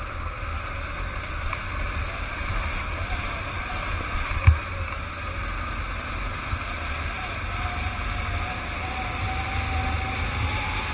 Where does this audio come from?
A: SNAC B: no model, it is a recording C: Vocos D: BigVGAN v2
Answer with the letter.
B